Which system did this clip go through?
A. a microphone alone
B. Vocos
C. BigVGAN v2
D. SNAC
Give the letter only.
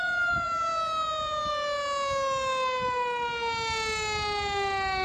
A